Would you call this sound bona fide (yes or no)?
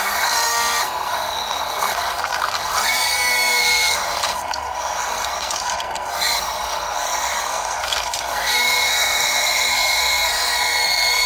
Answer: no